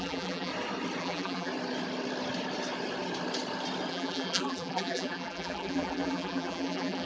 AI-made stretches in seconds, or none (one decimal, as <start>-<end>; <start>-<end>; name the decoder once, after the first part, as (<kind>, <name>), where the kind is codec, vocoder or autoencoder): 0.0-0.5 (vocoder, BigVGAN v2); 1.0-1.5; 3.9-7.1